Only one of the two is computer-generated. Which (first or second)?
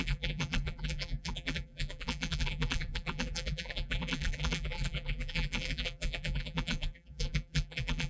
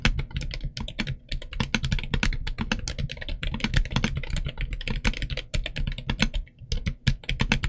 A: first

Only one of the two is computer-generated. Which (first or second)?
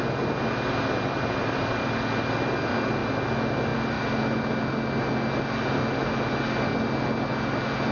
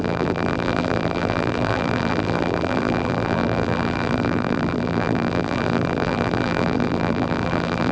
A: second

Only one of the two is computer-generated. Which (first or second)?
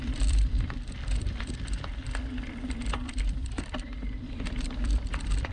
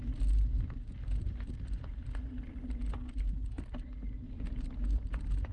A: first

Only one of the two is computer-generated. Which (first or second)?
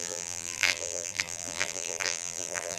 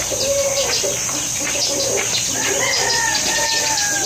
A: first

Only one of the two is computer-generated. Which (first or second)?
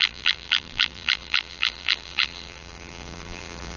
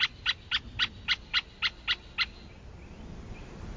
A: first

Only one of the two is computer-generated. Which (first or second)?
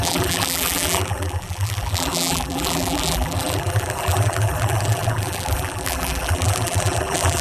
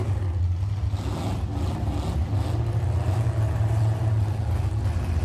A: first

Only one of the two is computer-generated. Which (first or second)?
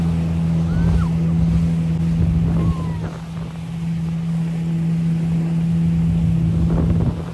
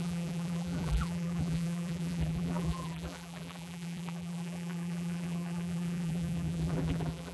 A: second